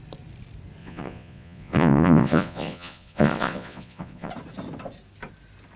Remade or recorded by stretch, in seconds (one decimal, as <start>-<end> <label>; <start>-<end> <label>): 0.0-0.8 recorded; 0.8-4.3 remade; 4.3-5.8 recorded